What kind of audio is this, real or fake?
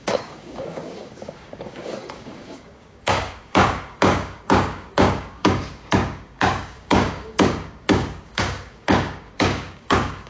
fake